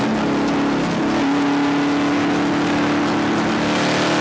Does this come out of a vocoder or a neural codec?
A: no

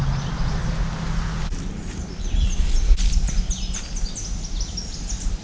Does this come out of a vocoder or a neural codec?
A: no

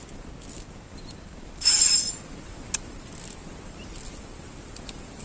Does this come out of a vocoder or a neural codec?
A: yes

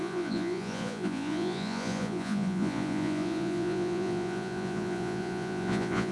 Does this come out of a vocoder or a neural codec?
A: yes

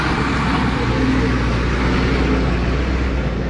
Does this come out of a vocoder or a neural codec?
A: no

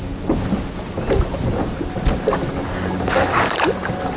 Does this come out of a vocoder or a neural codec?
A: no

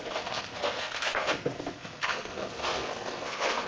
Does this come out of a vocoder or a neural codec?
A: yes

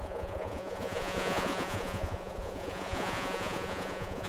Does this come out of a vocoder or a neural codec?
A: yes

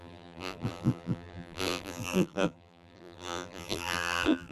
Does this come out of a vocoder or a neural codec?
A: yes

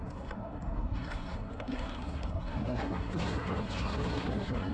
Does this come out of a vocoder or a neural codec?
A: yes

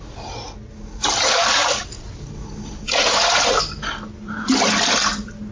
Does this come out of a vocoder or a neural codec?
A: no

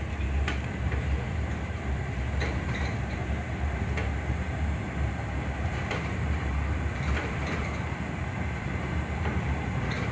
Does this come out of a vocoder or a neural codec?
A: yes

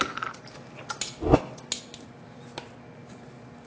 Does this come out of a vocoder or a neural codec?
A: no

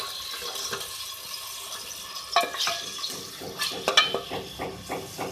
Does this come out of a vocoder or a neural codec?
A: no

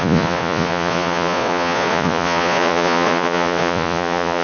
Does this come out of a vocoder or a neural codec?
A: yes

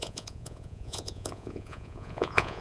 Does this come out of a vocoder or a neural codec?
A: yes